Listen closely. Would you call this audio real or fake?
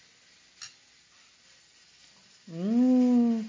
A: real